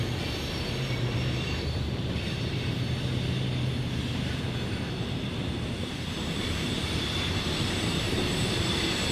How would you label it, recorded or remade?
remade